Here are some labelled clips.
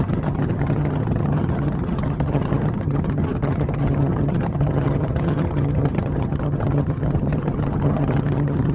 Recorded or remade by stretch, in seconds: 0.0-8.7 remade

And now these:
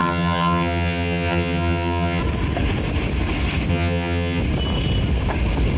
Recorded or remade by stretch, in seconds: 0.0-2.2 remade; 2.2-3.7 recorded; 3.7-4.4 remade; 4.4-5.8 recorded